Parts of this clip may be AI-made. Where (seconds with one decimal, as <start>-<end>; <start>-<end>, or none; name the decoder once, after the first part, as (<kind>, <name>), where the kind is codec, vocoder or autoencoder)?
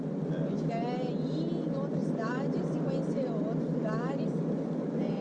none